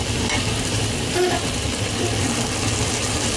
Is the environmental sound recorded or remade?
recorded